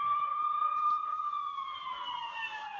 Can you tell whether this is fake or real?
fake